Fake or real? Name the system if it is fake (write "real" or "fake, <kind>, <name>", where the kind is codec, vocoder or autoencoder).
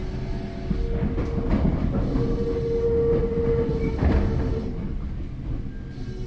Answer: real